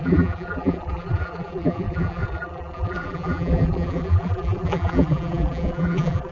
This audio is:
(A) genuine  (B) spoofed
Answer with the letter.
B